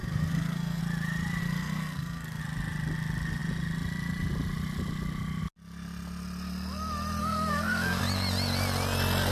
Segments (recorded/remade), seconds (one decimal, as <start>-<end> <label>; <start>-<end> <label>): 0.0-0.8 remade; 0.8-1.4 recorded; 1.4-2.4 remade; 2.4-7.2 recorded; 7.2-8.0 remade; 8.0-9.3 recorded